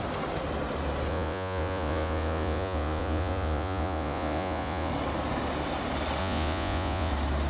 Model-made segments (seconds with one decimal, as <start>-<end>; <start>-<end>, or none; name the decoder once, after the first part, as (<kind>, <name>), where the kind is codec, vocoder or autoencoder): 1.1-4.9 (vocoder, Vocos); 6.2-7.1